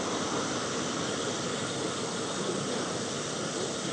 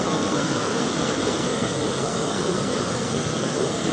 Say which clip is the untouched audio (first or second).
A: first